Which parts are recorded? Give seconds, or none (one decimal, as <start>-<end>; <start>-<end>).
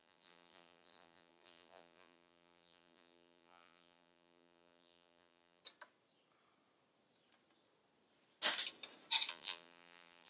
5.6-9.3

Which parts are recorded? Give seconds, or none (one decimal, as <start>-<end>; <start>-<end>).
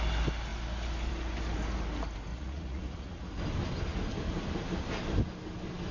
0.0-2.3; 3.3-5.9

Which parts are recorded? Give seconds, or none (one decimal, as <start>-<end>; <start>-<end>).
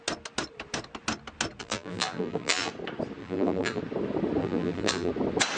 0.0-1.6; 2.7-3.2; 3.8-4.4; 5.1-5.6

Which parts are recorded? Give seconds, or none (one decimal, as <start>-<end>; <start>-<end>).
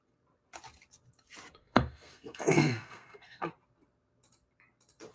0.0-1.6; 3.5-5.1